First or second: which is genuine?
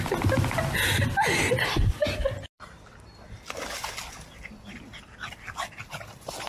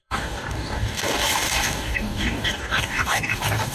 first